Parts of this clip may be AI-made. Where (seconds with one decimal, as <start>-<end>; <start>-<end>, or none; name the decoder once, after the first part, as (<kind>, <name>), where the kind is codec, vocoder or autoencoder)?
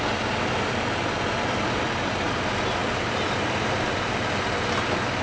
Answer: none